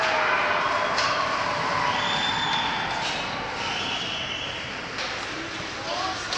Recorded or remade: recorded